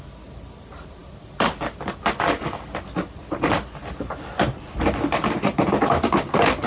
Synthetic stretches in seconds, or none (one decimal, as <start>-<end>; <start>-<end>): none